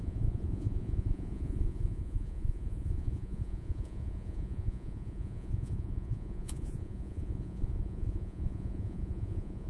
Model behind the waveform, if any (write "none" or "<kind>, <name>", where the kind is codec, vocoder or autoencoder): vocoder, Vocos